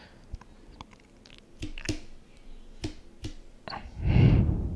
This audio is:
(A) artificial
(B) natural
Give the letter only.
B